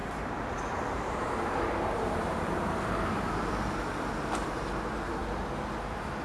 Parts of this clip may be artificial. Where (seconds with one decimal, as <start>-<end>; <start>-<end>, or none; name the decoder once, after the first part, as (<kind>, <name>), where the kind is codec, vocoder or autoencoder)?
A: 0.0-3.7 (vocoder, BigVGAN v2)